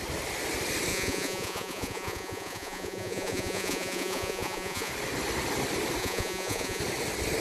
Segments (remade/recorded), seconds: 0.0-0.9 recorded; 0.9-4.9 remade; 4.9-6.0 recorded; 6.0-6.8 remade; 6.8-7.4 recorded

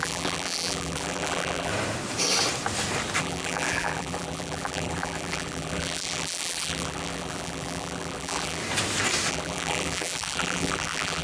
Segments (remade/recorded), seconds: 0.0-1.7 remade; 1.7-3.2 recorded; 3.2-8.6 remade; 8.6-9.3 recorded; 9.3-11.2 remade

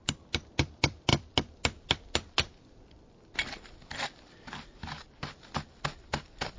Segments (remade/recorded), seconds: 0.0-6.6 recorded

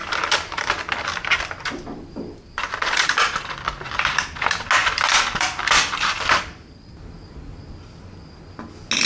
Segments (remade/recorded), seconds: 0.0-4.2 remade; 4.2-4.8 recorded; 4.8-6.8 remade; 6.8-9.1 recorded

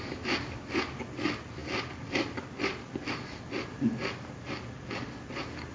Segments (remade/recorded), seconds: 0.0-5.7 recorded

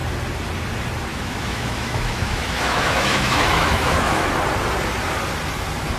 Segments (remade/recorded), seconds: 0.0-1.1 recorded; 1.1-4.3 remade; 4.3-6.0 recorded